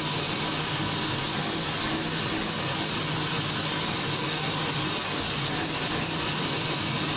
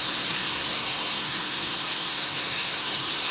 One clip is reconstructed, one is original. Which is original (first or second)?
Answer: first